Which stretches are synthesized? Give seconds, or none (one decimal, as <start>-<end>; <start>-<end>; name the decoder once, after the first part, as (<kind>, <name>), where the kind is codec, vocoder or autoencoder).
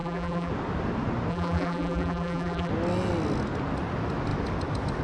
0.0-0.5 (vocoder, BigVGAN v2); 1.3-2.7